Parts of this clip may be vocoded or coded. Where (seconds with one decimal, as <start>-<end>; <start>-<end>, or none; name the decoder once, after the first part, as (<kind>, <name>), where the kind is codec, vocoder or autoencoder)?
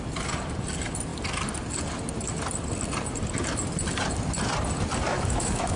5.1-5.8 (autoencoder, DAC-VAE)